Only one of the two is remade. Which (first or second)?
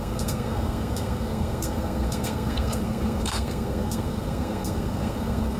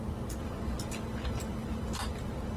first